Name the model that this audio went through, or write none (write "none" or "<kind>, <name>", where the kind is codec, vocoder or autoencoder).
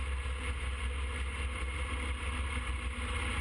none